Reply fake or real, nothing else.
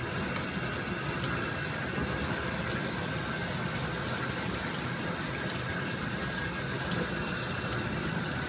real